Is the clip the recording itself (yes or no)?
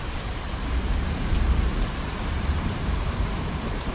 no